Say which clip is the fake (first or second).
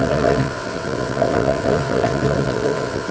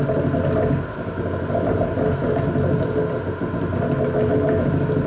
first